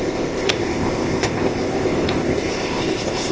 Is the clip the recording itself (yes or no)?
no